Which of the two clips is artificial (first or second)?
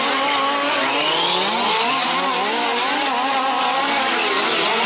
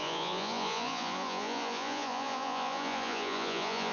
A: second